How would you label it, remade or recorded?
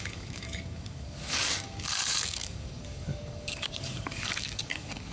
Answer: remade